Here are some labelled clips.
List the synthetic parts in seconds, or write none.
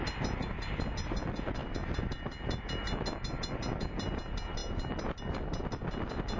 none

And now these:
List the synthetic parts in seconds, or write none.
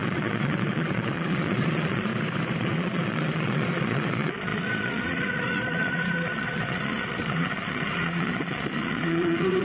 0.0-2.1; 2.6-9.6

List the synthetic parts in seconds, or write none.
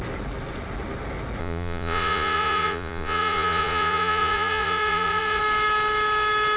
1.4-5.4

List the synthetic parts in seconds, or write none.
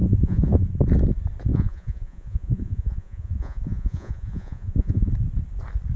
0.0-0.7; 1.5-5.1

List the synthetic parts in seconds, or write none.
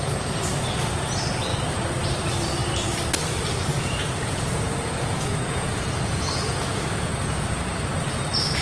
3.7-7.1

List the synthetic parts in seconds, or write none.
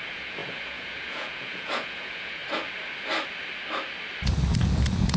0.0-2.4; 4.6-5.2